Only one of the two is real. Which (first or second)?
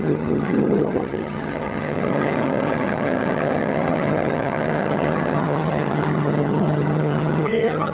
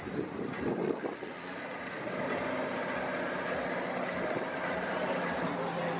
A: second